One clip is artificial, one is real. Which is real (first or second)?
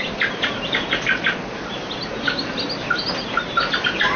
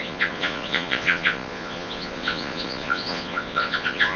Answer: first